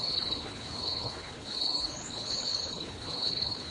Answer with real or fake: fake